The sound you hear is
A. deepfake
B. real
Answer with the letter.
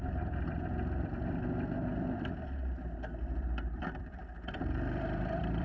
A